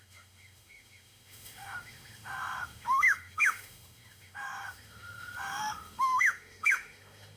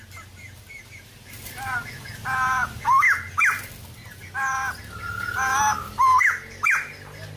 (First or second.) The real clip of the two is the second